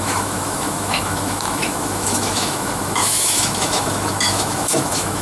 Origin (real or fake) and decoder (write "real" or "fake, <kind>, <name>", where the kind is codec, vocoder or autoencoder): fake, autoencoder, DAC-VAE